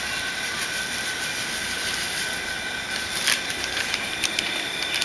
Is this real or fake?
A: real